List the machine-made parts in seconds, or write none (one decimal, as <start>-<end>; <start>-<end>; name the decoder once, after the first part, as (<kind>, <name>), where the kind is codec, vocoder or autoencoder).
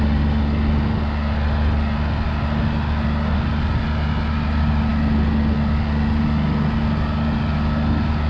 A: none